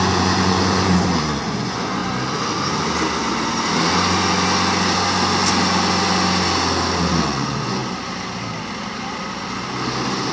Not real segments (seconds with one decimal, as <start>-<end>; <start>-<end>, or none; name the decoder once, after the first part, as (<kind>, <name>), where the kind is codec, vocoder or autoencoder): 0.0-2.0 (vocoder, Vocos); 7.2-7.8